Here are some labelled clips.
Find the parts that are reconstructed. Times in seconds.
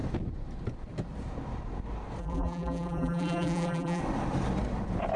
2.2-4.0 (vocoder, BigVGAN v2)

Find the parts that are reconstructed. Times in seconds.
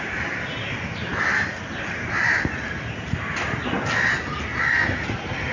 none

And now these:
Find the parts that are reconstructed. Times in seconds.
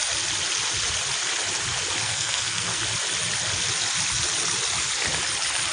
2.0-2.8 (codec, SNAC)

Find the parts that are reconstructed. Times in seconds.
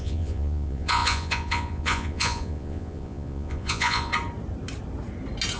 0.0-4.1 (vocoder, Vocos)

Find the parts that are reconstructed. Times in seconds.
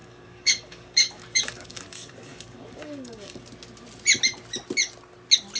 0.0-3.4 (codec, DAC)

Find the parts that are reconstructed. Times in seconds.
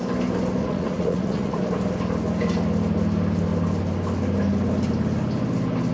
0.6-1.6 (vocoder, Vocos)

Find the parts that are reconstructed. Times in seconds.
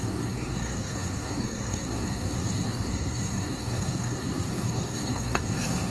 0.0-5.9 (codec, SNAC)